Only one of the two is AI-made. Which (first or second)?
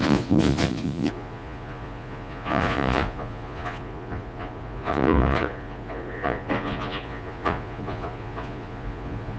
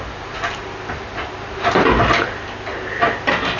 first